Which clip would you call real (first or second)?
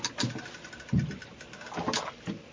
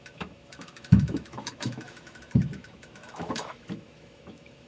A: first